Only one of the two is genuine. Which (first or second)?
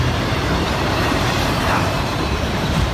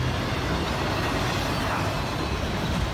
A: second